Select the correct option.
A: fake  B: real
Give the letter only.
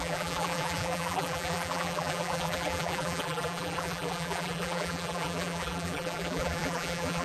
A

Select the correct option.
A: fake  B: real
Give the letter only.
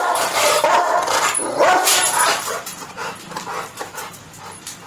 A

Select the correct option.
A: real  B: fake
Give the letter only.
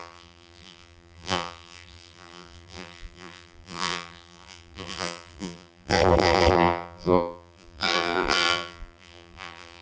B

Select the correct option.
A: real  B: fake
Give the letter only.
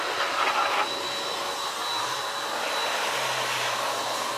A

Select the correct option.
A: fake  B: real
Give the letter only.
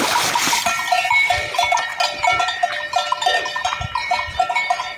A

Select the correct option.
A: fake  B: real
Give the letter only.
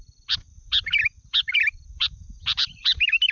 A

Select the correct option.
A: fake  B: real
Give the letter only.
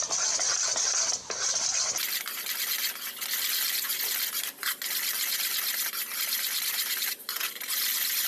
B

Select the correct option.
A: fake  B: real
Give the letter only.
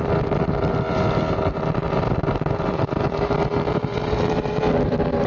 A